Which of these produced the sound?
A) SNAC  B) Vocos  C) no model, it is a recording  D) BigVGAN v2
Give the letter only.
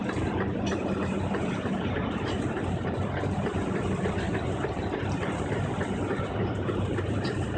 D